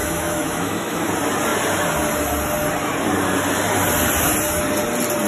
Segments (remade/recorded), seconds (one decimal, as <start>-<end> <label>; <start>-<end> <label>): 0.0-1.1 remade; 1.1-5.3 recorded